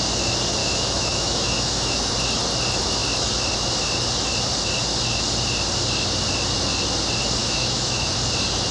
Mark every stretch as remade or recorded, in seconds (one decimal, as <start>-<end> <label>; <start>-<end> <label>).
0.0-0.6 recorded; 0.6-2.1 remade; 2.1-7.4 recorded; 7.4-8.1 remade; 8.1-8.7 recorded